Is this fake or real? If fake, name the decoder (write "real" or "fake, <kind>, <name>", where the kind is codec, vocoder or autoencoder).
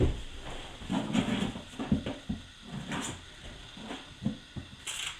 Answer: real